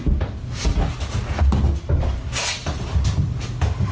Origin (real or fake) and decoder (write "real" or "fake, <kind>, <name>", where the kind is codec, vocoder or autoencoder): real